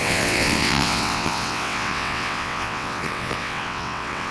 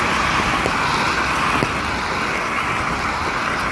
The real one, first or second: second